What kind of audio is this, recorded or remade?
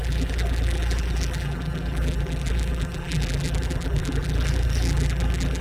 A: remade